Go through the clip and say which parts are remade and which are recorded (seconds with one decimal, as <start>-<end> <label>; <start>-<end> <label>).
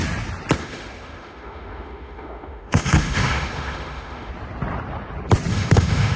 0.0-0.6 recorded; 0.6-4.3 remade; 4.3-5.5 recorded; 5.5-6.2 remade